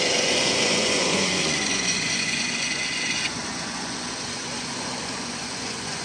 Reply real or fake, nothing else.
fake